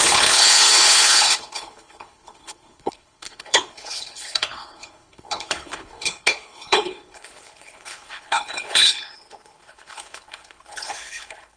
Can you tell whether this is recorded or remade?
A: remade